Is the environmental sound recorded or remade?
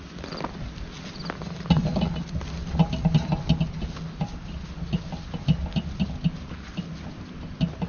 recorded